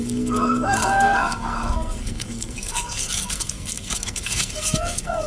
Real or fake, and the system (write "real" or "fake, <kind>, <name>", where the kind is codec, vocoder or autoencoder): fake, codec, SNAC